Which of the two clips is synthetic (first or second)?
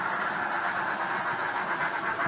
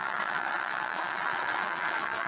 second